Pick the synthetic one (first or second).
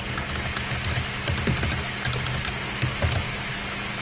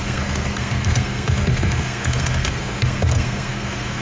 second